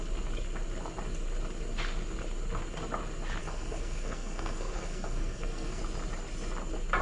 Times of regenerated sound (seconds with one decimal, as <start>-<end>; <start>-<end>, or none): 3.4-5.8